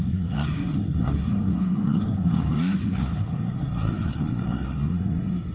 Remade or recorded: remade